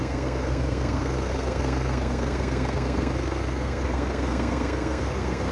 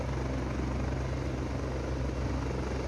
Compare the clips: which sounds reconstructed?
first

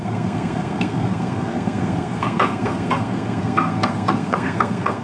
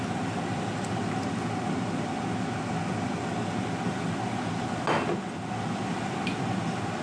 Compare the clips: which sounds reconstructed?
first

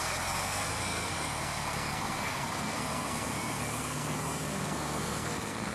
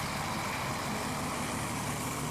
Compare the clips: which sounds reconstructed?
first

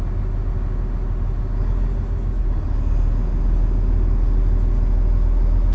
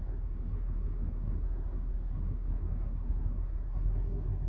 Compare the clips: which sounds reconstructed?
second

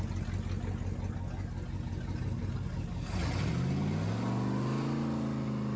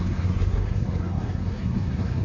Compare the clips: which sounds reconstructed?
second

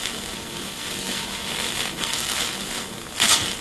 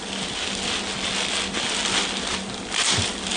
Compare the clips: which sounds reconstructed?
first